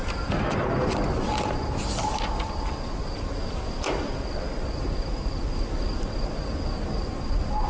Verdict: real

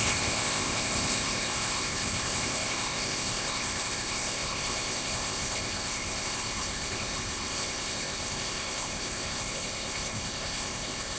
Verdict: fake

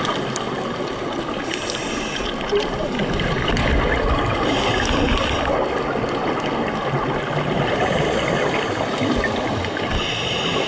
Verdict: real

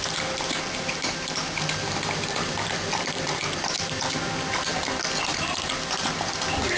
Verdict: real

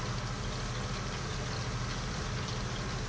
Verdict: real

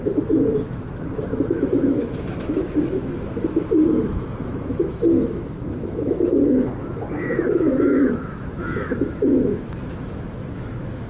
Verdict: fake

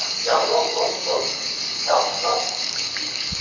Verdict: fake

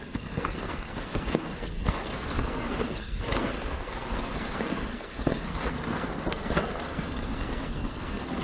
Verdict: fake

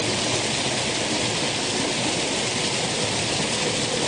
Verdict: real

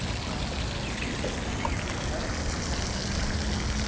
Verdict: real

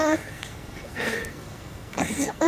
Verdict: fake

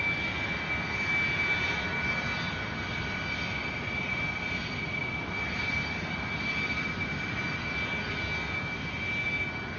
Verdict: real